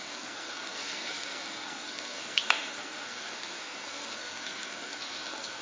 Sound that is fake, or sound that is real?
fake